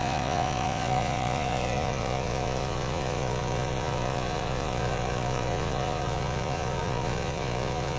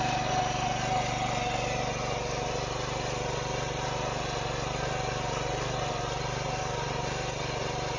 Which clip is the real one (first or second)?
second